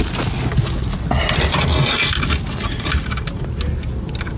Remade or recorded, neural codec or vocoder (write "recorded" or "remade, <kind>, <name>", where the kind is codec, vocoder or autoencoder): recorded